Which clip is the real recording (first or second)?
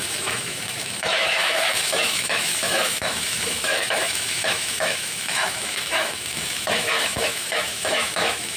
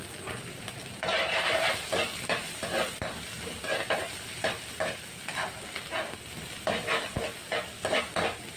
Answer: second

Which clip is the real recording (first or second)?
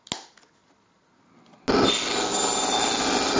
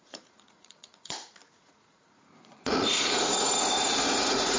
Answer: first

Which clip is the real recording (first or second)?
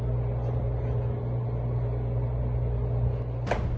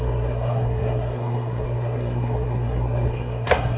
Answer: first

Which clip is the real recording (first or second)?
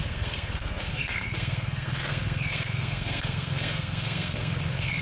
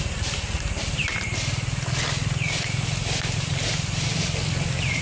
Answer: second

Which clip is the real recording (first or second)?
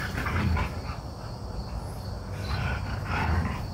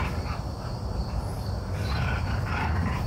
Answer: first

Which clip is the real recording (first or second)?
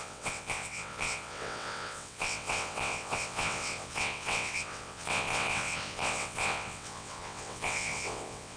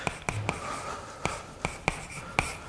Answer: second